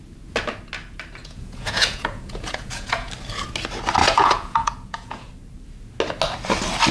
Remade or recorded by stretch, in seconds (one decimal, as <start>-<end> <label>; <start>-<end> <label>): 0.0-1.2 recorded; 1.2-3.1 remade; 3.1-4.0 recorded; 4.0-5.3 remade; 5.3-6.9 recorded